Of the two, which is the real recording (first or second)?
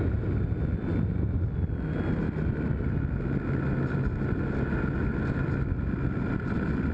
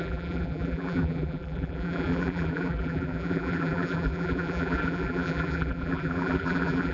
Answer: first